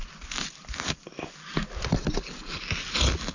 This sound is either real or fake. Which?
real